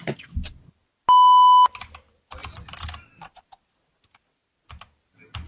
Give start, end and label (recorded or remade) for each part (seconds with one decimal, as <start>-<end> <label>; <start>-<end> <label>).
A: 0.0-5.5 recorded